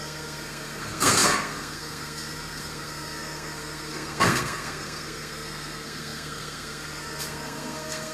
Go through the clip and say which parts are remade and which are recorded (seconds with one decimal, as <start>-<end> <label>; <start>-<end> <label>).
0.0-8.1 remade